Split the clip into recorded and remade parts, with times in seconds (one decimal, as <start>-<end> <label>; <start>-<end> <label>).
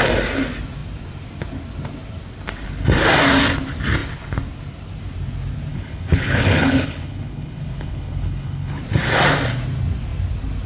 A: 0.0-5.7 recorded; 5.7-8.8 remade; 8.8-10.7 recorded